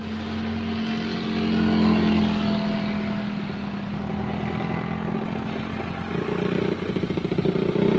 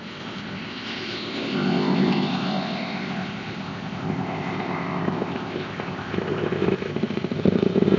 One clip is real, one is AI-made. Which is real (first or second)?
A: first